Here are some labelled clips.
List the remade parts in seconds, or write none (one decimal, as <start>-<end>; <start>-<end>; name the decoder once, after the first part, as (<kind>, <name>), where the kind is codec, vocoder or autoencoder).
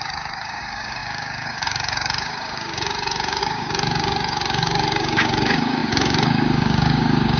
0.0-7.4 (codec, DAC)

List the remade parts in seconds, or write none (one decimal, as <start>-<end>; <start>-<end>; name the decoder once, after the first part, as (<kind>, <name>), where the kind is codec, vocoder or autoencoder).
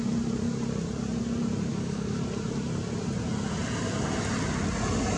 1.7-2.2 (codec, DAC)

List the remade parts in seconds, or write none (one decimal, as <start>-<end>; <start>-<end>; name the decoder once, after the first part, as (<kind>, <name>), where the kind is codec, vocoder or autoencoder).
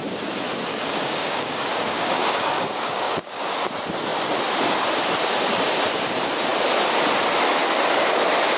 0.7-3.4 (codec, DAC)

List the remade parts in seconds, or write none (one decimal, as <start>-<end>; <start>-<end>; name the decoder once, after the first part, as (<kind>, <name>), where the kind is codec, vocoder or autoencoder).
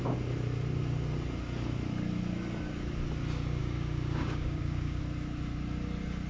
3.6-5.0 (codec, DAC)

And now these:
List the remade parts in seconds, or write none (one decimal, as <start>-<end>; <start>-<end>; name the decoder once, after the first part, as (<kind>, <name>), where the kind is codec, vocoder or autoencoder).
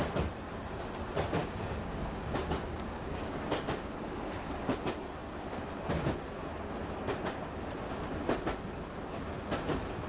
1.4-4.5 (codec, DAC)